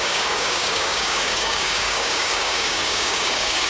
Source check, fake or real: fake